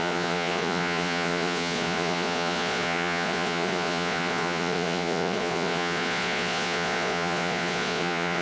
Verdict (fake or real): fake